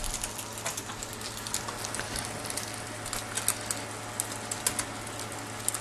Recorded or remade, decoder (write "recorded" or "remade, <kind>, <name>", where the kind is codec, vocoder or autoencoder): recorded